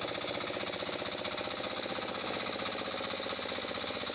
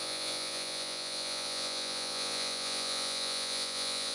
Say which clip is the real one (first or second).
first